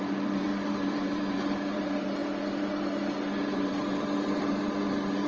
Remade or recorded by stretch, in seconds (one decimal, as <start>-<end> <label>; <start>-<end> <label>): 0.0-5.3 remade